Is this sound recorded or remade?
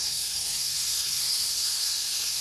remade